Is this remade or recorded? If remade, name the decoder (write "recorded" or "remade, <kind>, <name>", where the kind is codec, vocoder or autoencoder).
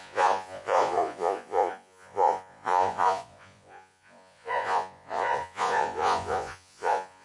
remade, vocoder, Vocos